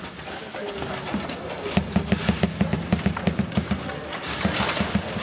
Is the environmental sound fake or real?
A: real